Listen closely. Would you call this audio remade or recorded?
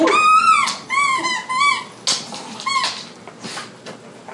recorded